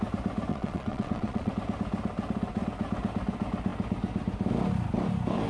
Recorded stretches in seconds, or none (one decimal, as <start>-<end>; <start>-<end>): 0.0-0.5; 1.5-5.5